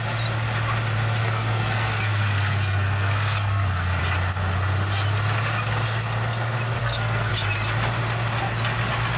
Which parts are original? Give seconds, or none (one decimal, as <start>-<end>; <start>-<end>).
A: 0.0-1.2; 4.0-6.8; 7.3-9.2